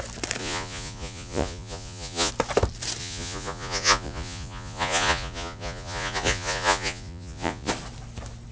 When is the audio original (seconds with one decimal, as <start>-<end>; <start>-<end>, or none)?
0.0-0.4; 2.3-3.0; 7.7-8.5